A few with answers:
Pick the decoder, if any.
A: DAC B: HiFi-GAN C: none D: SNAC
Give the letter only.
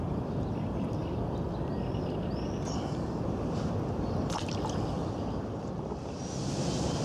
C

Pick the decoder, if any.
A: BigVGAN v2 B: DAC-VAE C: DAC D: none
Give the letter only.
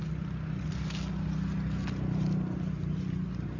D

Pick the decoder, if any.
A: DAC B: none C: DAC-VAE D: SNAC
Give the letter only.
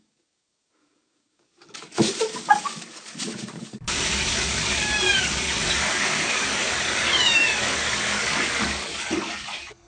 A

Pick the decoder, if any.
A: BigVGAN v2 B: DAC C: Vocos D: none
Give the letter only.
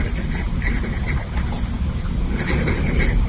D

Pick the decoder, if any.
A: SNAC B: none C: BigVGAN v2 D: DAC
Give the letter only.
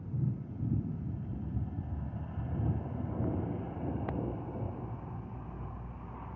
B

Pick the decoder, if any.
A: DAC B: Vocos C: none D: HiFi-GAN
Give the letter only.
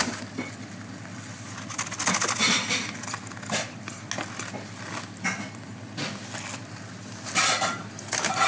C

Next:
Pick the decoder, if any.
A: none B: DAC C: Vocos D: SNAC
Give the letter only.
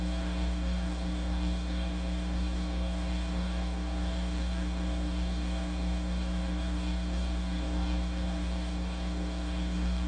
B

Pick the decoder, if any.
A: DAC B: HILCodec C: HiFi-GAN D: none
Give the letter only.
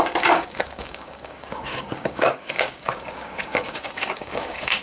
A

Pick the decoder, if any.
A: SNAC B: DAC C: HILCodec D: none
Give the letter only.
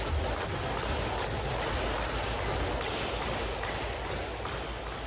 D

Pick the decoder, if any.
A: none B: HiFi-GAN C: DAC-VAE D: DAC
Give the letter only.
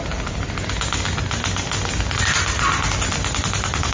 A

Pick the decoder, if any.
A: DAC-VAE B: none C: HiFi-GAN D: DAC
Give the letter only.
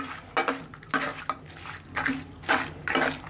B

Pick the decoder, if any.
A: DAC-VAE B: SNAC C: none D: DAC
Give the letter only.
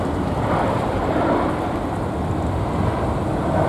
C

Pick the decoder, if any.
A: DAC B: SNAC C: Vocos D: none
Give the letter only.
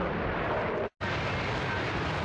D